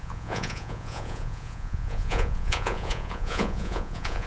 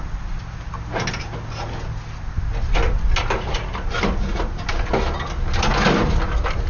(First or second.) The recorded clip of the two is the second